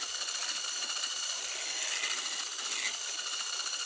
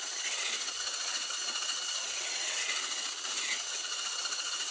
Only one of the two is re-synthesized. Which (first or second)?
second